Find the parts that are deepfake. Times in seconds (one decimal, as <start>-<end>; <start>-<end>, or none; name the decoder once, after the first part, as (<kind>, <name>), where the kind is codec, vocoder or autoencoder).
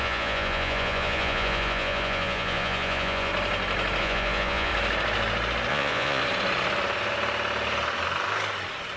0.0-3.3 (vocoder, Vocos); 4.0-4.7; 5.7-6.2